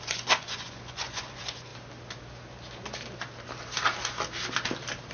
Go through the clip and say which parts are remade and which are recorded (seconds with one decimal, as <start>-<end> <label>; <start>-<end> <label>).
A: 0.0-1.7 remade; 1.7-5.1 recorded